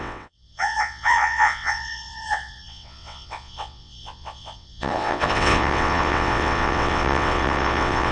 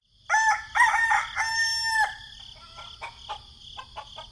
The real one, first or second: second